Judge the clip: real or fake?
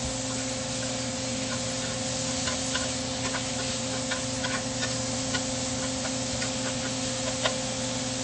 real